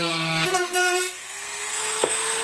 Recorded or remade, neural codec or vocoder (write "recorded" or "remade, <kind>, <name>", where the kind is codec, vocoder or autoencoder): remade, codec, SNAC